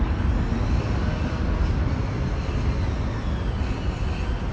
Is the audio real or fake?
real